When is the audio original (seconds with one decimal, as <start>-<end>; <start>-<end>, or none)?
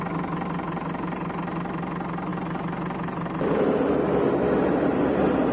0.0-5.5